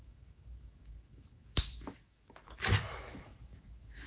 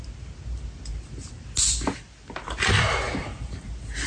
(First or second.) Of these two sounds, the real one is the second